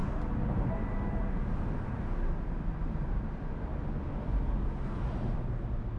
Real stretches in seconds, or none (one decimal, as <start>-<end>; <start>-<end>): 0.0-6.0